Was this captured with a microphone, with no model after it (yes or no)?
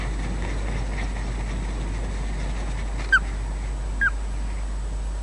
yes